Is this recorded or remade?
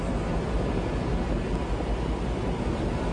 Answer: recorded